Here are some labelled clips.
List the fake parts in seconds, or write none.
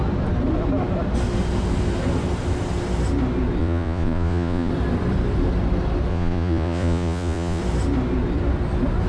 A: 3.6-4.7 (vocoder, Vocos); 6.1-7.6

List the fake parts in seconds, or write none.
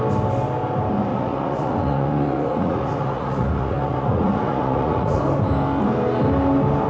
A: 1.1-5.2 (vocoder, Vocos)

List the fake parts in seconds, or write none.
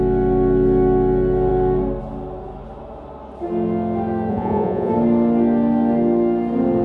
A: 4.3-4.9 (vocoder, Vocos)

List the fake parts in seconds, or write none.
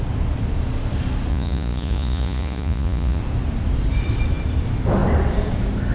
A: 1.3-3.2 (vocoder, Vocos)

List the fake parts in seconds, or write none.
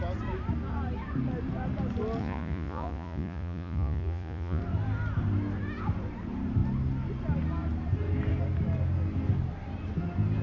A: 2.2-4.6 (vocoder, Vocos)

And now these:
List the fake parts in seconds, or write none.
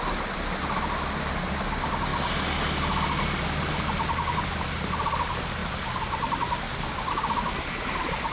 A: none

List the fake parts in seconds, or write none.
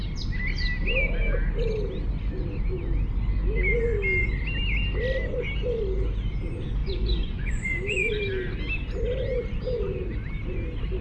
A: 6.8-8.1 (vocoder, Vocos)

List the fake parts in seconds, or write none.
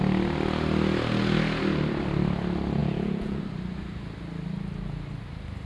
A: 2.8-3.4 (vocoder, Vocos)